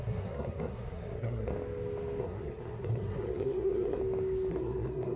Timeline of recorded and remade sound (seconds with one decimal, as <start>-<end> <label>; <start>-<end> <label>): 0.0-1.5 remade; 1.5-2.2 recorded; 2.2-4.0 remade; 4.0-4.5 recorded; 4.5-5.2 remade